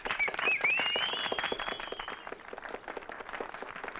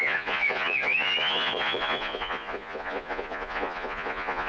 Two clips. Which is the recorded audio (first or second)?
first